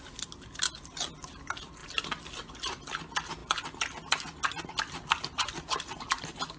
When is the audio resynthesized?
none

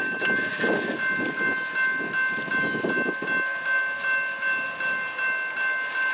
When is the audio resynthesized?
none

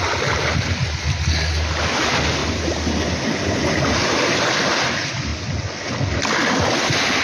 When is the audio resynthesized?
none